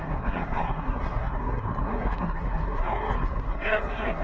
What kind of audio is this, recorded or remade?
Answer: remade